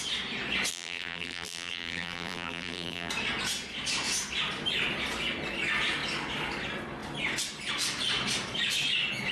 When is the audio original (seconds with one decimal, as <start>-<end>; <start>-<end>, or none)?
0.0-0.7; 3.1-9.3